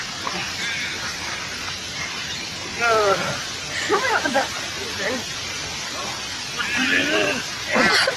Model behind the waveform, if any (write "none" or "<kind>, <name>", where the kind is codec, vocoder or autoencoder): none